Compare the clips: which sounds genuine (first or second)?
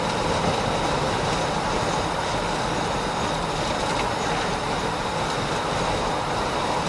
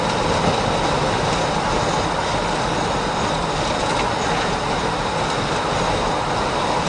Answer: second